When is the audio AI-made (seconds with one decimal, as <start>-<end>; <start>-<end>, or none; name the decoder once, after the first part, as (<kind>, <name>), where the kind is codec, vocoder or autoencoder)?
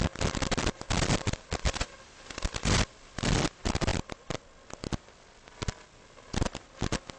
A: none